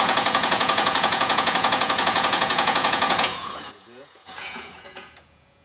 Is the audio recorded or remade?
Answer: remade